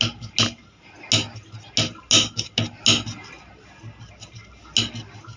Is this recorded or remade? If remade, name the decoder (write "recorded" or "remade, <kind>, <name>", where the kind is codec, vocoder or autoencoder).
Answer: recorded